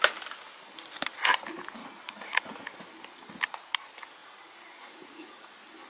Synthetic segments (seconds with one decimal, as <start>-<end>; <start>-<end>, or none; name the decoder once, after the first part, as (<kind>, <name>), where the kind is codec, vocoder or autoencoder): 1.8-2.5 (vocoder, Vocos); 4.2-5.5